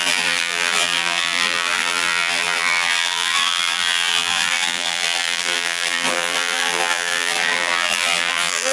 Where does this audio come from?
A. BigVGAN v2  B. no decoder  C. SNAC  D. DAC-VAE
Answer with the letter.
A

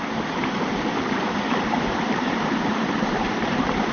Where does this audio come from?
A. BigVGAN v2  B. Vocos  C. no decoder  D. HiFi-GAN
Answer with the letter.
A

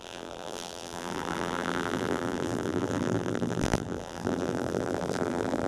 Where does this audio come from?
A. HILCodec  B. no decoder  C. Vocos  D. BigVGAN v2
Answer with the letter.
D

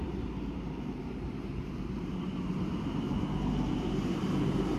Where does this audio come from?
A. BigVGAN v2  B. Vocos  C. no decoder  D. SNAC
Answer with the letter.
A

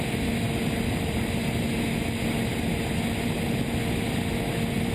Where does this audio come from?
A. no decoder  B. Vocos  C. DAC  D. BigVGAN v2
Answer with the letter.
A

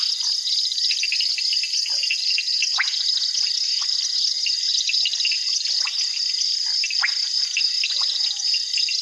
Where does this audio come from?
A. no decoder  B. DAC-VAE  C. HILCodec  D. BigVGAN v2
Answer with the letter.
A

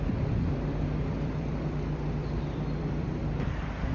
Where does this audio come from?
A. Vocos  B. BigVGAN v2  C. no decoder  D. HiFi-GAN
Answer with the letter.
B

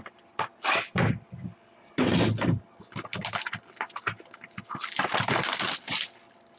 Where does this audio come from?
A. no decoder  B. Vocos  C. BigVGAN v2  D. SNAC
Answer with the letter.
A